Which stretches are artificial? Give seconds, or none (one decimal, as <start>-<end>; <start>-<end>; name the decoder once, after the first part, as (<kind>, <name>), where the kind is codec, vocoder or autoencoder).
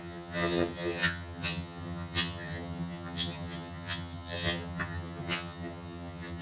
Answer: 0.0-6.4 (vocoder, HiFi-GAN)